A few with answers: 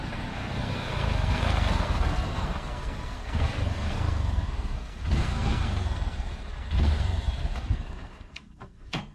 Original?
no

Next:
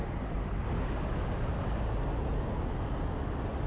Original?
yes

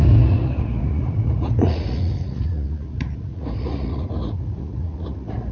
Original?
no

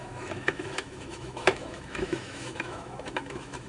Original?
no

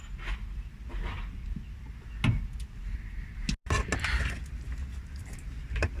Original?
yes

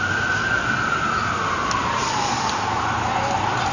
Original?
yes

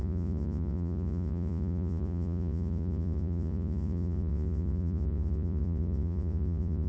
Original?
no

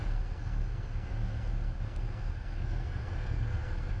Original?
no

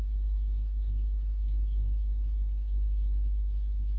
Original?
no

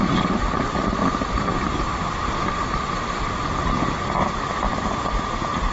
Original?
yes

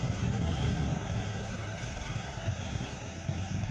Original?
no